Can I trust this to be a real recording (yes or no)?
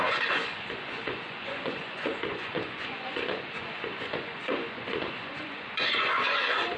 no